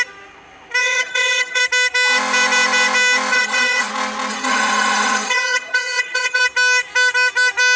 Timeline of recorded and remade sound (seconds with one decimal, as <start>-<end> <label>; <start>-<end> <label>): 0.0-0.8 recorded; 0.8-1.6 remade; 1.6-3.3 recorded; 3.3-3.9 remade; 3.9-4.3 recorded; 4.3-6.4 remade; 6.4-7.8 recorded